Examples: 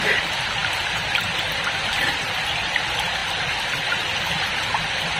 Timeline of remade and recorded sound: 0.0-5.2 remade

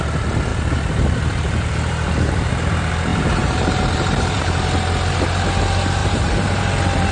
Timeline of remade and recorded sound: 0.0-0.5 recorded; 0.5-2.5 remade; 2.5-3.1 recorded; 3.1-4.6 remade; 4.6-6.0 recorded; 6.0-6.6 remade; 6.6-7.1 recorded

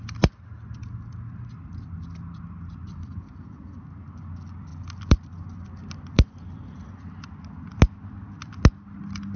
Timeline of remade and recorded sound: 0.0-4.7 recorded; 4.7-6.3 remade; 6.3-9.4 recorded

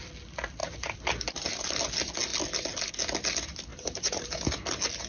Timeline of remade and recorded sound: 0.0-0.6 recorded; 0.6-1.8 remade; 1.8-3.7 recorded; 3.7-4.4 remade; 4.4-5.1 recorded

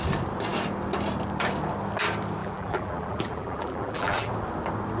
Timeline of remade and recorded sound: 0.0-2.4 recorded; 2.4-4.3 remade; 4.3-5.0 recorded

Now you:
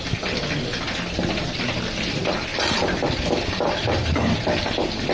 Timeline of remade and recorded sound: 0.0-2.5 recorded; 2.5-4.6 remade; 4.6-5.1 recorded

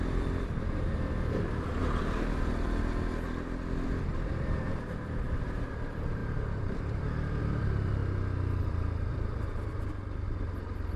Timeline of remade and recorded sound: 0.0-1.8 remade; 1.8-4.1 recorded; 4.1-8.0 remade; 8.0-8.6 recorded; 8.6-11.0 remade

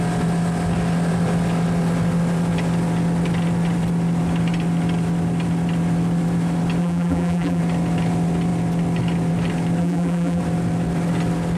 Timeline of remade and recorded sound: 0.0-6.8 recorded; 6.8-7.6 remade; 7.6-9.8 recorded; 9.8-10.4 remade; 10.4-11.6 recorded